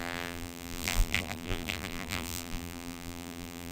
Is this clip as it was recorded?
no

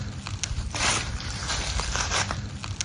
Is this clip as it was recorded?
yes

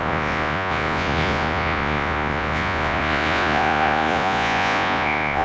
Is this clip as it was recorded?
no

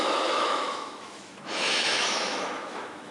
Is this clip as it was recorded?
no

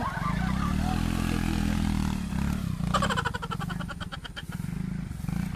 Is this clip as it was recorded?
yes